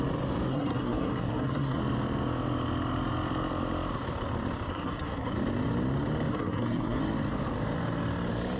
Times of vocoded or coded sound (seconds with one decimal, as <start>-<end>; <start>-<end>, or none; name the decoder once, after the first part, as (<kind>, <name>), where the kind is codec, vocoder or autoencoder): 0.5-1.8 (codec, SNAC); 4.7-5.3; 6.3-7.0